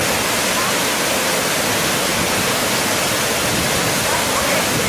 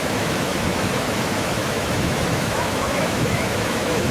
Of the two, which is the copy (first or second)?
second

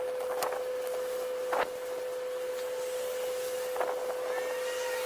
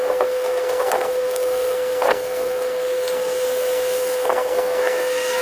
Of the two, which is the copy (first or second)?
second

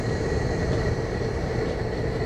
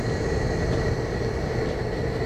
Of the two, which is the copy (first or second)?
first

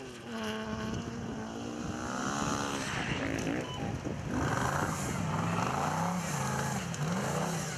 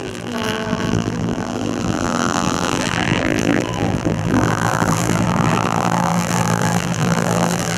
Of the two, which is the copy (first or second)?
second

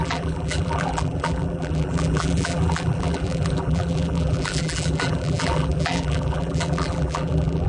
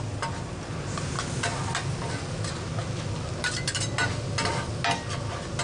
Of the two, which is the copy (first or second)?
first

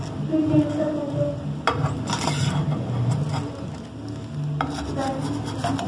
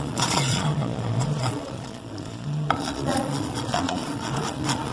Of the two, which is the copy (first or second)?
second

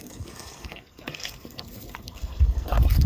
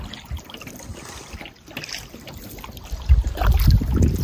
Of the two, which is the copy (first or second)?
first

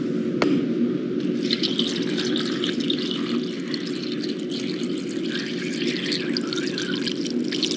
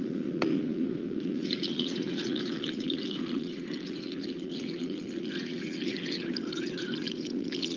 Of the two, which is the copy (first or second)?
second